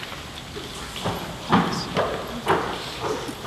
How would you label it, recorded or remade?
recorded